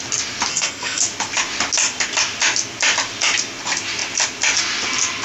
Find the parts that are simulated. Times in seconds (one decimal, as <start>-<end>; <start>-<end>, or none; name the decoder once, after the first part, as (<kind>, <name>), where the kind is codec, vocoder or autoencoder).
0.5-1.0 (codec, SNAC)